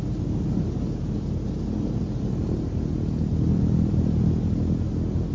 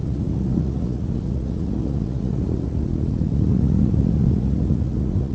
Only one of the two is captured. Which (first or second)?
first